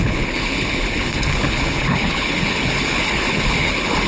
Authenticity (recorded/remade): remade